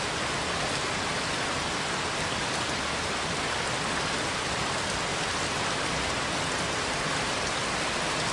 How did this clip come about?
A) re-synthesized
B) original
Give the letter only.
B